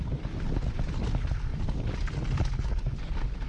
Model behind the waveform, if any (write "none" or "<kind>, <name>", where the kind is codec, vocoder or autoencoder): none